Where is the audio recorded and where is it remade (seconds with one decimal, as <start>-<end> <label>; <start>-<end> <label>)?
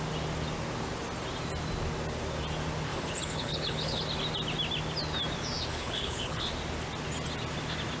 0.0-2.9 recorded; 2.9-4.0 remade; 4.0-5.7 recorded; 5.7-6.5 remade; 6.5-8.0 recorded